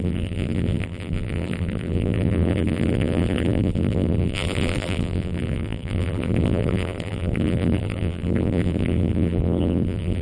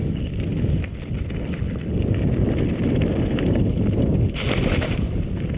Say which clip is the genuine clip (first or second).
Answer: second